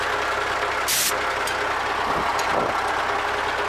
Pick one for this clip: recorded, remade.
recorded